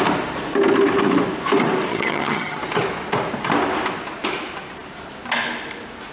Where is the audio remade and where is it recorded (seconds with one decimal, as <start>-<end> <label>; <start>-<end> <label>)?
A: 0.0-1.9 recorded; 1.9-2.6 remade; 2.6-6.1 recorded